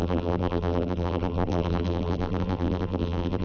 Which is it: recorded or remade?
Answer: remade